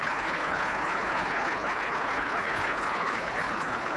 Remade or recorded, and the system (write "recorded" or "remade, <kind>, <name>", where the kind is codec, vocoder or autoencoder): remade, codec, HILCodec